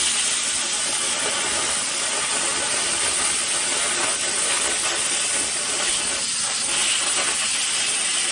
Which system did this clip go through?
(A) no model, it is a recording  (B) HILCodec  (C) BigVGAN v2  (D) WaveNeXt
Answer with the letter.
A